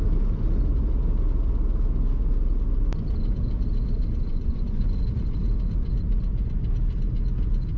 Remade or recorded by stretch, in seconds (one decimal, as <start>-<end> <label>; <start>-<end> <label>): 0.0-4.3 recorded; 4.3-4.8 remade; 4.8-7.8 recorded